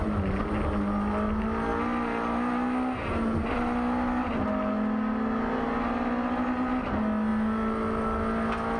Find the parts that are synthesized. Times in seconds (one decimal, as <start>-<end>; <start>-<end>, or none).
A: none